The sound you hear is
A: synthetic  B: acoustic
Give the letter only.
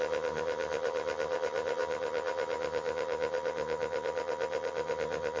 A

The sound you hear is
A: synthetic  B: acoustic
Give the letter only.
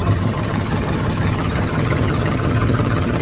A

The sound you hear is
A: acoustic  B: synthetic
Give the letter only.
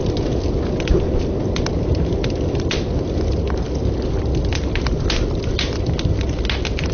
A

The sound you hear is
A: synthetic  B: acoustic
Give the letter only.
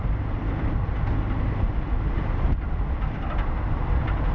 B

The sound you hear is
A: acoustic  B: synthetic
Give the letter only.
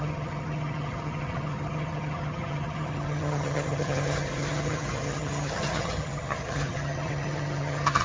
B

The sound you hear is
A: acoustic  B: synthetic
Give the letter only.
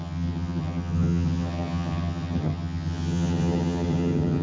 B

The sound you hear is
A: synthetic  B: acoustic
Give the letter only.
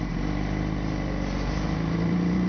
B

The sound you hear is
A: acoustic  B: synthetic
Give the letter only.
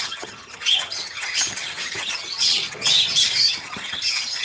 B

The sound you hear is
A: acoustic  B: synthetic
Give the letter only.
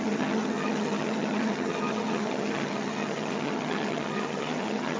B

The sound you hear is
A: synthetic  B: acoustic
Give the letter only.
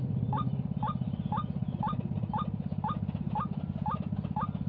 B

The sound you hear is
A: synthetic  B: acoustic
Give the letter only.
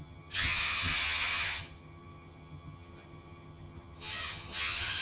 A